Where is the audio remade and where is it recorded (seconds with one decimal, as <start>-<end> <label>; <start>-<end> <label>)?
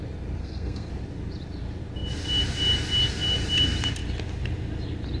0.0-0.4 recorded; 0.4-0.9 remade; 0.9-5.2 recorded